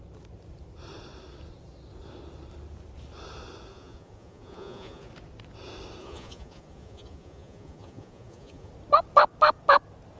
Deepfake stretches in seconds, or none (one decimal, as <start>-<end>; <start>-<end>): 3.7-5.1; 6.0-8.7